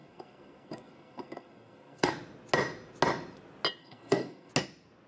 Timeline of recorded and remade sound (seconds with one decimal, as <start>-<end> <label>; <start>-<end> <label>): 0.0-2.1 remade; 2.1-3.8 recorded; 3.8-4.5 remade; 4.5-5.1 recorded